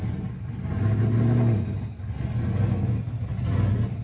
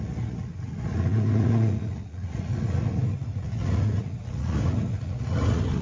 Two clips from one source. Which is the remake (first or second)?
second